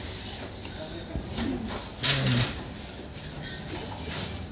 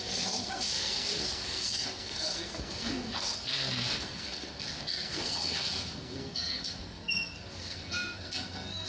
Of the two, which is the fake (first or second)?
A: second